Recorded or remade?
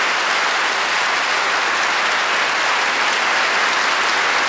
recorded